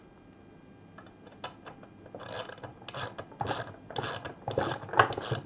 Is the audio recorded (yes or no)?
yes